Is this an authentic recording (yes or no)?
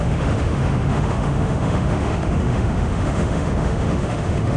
no